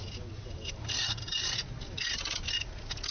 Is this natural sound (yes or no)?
yes